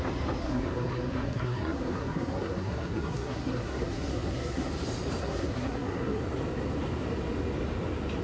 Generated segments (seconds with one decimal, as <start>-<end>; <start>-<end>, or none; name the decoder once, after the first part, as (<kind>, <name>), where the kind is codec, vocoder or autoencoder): 0.4-4.7 (codec, SNAC); 5.2-6.2